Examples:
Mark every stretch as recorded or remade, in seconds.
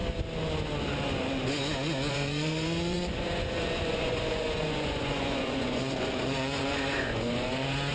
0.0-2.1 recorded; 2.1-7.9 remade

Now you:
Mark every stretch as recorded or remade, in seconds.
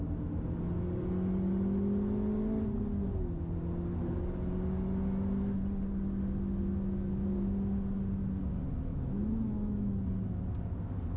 0.0-8.9 recorded; 8.9-9.9 remade; 9.9-11.2 recorded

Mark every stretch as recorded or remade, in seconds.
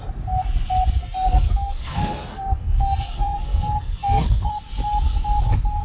0.0-1.0 recorded; 1.0-4.5 remade; 4.5-5.8 recorded